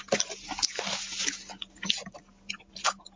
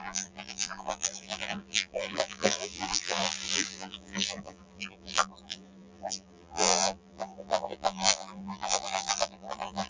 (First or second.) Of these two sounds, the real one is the first